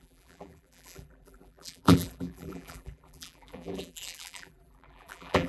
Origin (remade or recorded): remade